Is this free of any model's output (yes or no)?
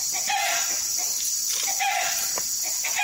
yes